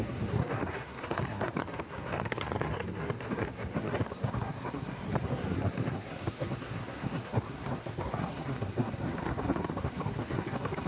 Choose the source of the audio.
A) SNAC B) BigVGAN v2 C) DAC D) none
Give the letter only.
A